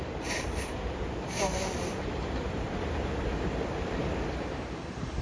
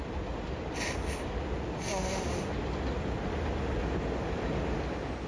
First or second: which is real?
second